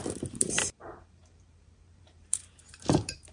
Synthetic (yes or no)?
yes